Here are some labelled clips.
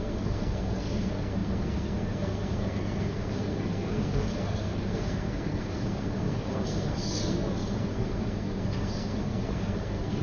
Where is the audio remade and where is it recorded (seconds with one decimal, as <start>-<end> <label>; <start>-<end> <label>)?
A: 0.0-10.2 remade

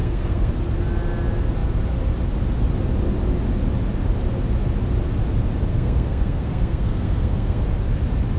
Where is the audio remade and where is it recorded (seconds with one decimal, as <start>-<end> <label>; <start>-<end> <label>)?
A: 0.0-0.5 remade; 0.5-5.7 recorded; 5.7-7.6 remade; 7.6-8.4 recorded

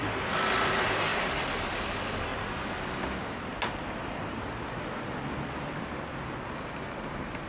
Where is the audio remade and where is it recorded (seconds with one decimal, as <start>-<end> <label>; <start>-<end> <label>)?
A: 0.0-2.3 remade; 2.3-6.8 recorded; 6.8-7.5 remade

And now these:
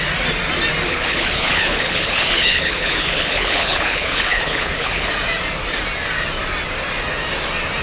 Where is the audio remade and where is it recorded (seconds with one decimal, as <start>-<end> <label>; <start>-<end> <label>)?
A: 0.0-0.9 recorded; 0.9-5.1 remade; 5.1-7.8 recorded